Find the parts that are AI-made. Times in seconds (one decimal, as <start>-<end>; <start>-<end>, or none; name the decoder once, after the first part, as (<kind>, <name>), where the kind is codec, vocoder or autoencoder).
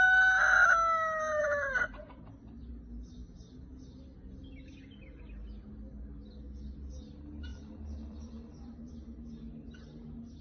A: 1.4-2.3 (vocoder, BigVGAN v2); 7.5-8.9